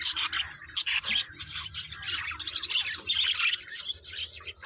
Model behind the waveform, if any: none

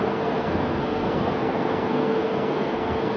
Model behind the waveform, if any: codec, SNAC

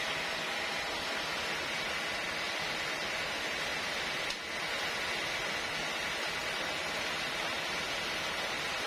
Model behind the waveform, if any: none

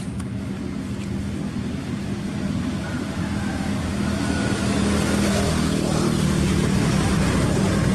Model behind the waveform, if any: none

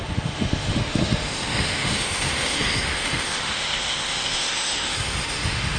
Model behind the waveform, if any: autoencoder, DAC-VAE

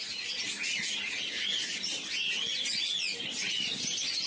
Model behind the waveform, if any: none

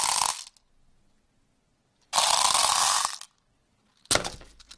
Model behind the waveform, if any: none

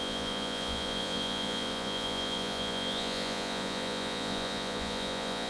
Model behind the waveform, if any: vocoder, Vocos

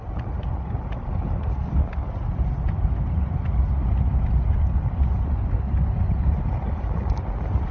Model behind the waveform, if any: none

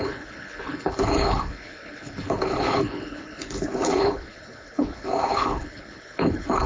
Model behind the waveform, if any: codec, HILCodec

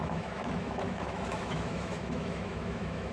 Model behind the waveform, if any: autoencoder, DAC-VAE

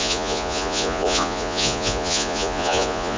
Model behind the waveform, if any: vocoder, Vocos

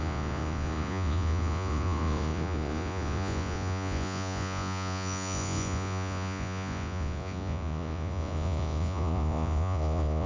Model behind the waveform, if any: vocoder, Vocos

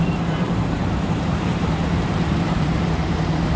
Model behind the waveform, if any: vocoder, BigVGAN v2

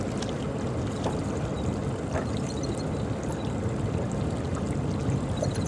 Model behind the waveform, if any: none